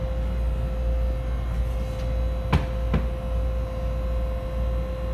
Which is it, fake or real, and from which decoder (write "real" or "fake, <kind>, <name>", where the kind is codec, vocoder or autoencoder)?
real